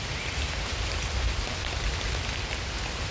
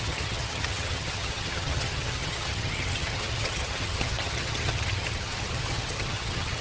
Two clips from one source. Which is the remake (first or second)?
second